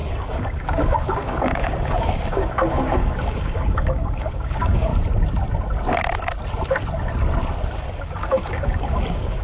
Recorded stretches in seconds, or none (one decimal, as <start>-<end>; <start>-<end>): 4.9-7.9